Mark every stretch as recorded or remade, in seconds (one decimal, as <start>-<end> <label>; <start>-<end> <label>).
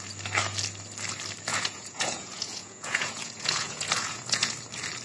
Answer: 0.0-1.5 recorded; 1.5-4.5 remade; 4.5-5.0 recorded